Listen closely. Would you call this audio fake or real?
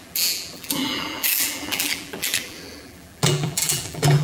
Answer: fake